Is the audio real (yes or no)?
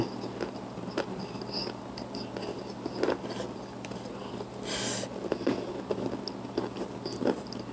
yes